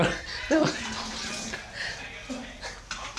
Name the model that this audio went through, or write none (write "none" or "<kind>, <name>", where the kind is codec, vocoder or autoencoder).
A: none